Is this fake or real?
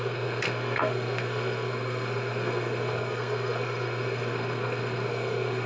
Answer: fake